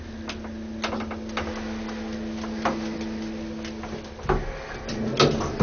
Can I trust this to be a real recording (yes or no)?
yes